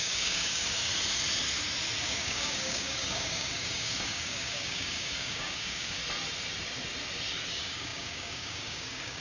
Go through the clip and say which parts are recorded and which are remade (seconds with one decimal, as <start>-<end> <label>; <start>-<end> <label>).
0.0-0.9 remade; 0.9-2.0 recorded; 2.0-6.0 remade; 6.0-7.5 recorded; 7.5-9.2 remade